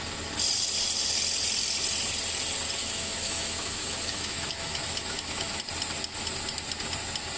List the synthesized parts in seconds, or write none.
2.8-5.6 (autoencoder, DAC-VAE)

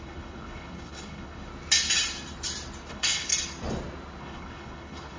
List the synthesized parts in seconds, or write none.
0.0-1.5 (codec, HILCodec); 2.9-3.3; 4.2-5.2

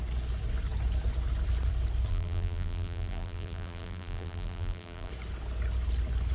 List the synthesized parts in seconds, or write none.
2.1-5.1 (vocoder, BigVGAN v2)